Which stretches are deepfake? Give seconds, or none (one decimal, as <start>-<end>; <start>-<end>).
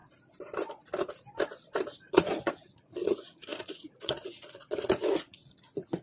2.1-6.0